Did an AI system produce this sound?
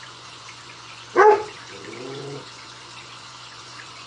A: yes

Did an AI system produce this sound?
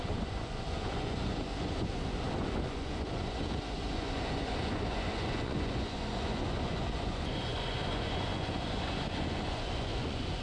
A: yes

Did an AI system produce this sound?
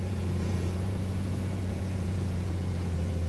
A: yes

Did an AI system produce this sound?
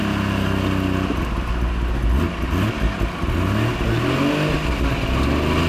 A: no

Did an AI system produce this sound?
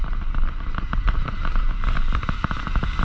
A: no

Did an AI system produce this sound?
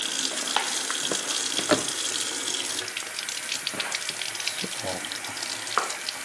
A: no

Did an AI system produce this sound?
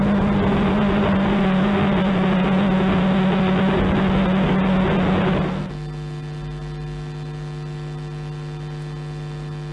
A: no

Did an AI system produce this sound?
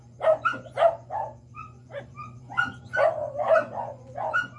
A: yes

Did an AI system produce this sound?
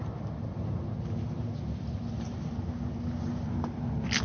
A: no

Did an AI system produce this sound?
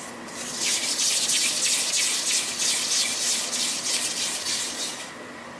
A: no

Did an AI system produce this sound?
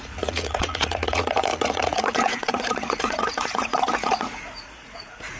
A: yes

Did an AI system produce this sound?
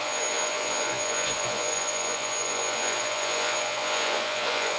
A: yes